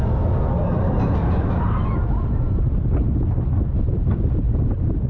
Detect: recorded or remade recorded